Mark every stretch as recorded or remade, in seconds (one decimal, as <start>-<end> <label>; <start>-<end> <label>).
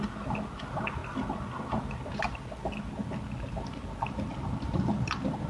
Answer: 0.0-5.5 recorded